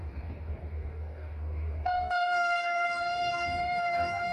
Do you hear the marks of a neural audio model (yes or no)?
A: yes